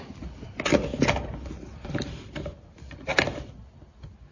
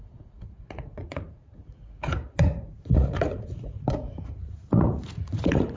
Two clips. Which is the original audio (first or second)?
first